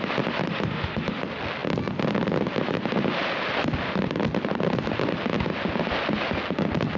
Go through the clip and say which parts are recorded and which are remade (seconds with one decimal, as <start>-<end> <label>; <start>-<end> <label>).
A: 0.0-0.4 recorded; 0.4-1.2 remade; 1.2-7.0 recorded